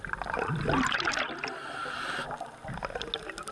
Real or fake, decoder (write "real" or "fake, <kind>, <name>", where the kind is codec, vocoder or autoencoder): real